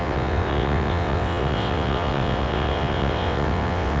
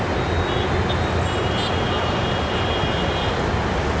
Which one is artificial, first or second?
first